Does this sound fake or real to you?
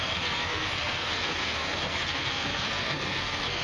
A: fake